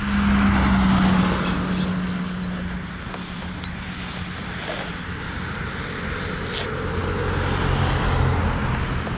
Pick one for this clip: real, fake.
real